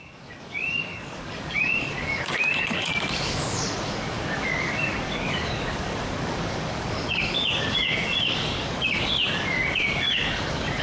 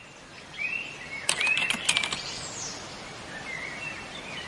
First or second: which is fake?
first